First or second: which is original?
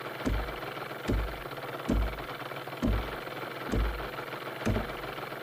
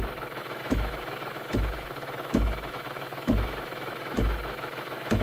first